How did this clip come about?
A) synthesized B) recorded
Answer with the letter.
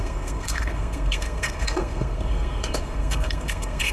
A